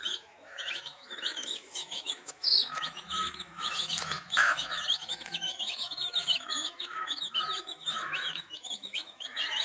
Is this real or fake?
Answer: fake